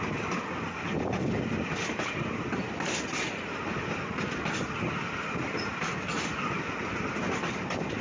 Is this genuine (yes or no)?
yes